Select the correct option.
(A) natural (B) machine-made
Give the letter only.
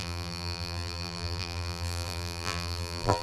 B